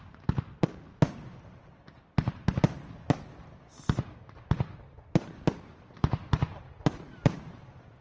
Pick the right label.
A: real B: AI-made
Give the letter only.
A